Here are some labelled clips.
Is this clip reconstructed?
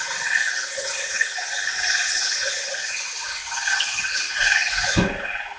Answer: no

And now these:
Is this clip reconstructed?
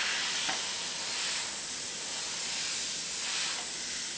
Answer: no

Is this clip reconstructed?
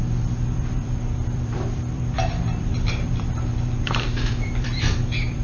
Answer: yes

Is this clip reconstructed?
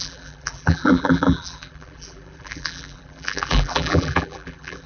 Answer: yes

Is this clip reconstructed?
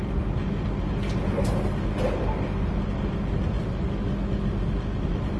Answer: no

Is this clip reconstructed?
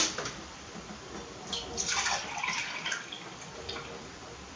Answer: no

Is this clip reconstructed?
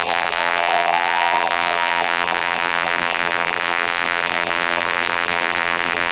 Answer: yes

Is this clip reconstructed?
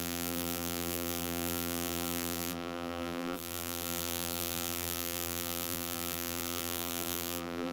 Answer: yes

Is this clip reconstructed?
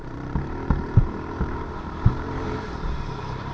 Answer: yes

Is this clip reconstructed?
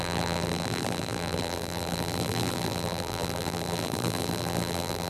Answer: yes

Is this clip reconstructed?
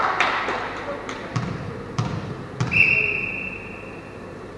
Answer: yes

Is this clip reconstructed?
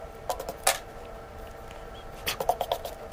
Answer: no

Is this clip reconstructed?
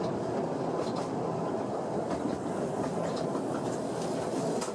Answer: no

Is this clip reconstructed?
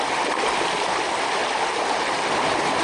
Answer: yes